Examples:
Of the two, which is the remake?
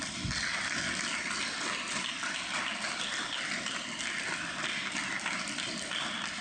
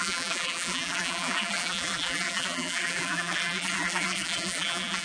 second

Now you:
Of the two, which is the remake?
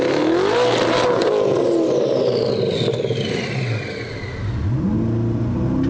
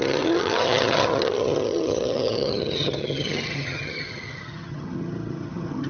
second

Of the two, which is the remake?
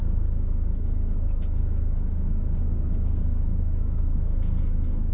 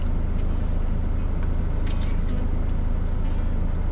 first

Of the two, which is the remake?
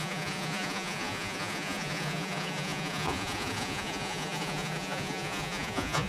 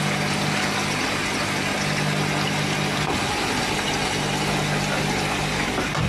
first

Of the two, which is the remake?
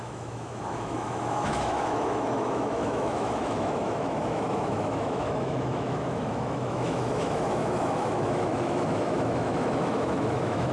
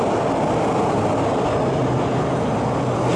first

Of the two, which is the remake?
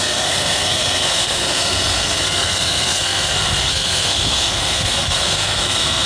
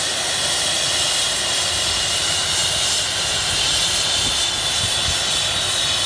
first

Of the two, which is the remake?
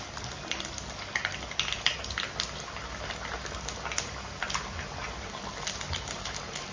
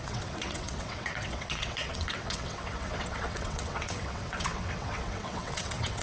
second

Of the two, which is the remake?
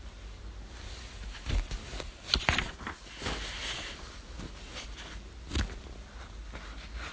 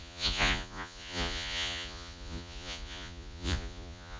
second